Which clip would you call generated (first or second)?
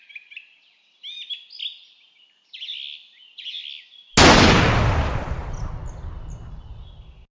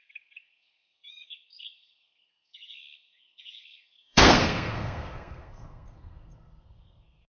second